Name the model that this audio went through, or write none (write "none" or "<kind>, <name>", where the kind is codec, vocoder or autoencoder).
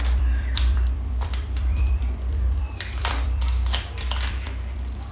vocoder, BigVGAN v2